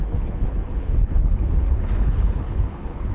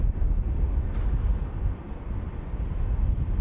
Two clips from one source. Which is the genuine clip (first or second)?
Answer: second